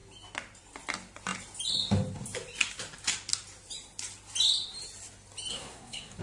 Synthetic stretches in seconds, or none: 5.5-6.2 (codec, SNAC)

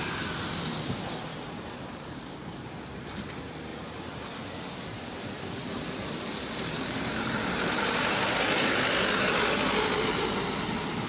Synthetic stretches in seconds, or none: 1.3-3.3 (vocoder, BigVGAN v2); 3.7-7.8

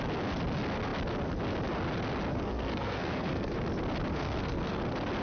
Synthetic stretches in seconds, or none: 2.3-3.5 (codec, SNAC); 4.1-4.8